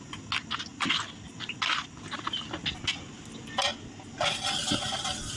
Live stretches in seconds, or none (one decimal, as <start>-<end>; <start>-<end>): 0.0-5.4